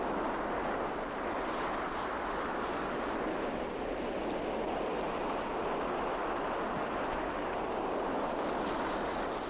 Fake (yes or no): no